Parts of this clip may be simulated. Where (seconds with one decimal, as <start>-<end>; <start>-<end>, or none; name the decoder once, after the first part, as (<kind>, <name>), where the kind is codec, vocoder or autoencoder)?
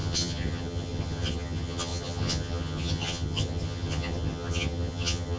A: 0.0-5.4 (vocoder, HiFi-GAN)